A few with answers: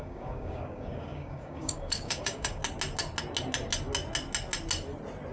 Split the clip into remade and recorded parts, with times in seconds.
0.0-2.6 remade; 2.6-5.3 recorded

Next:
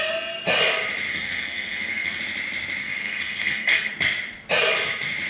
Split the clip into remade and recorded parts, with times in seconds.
0.0-1.1 recorded; 1.1-2.2 remade; 2.2-2.8 recorded; 2.8-3.9 remade; 3.9-5.3 recorded

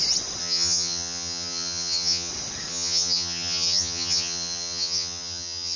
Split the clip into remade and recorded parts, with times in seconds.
0.0-0.4 recorded; 0.4-2.3 remade; 2.3-2.7 recorded; 2.7-5.8 remade

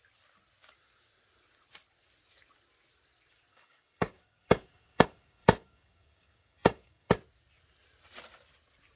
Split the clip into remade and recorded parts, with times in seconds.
0.0-3.5 recorded; 3.5-7.1 remade; 7.1-9.0 recorded

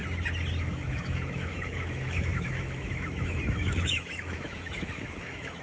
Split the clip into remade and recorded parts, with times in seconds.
0.0-0.6 recorded; 0.6-5.6 remade

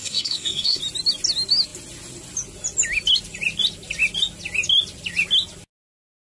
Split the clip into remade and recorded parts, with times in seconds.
0.0-0.8 remade; 0.8-6.3 recorded